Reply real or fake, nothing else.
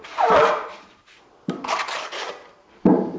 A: fake